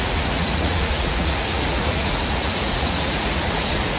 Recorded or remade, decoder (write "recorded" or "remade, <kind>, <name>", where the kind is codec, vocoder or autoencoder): remade, vocoder, Vocos